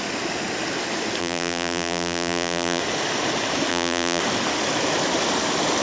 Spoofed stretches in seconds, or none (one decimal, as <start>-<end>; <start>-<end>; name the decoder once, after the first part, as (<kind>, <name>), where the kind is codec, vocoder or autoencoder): 1.2-2.8 (vocoder, BigVGAN v2); 3.7-4.2

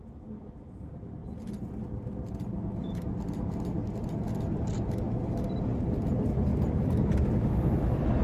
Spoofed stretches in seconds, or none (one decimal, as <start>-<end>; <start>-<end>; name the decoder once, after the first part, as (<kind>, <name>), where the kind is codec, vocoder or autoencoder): 6.5-7.1 (vocoder, BigVGAN v2)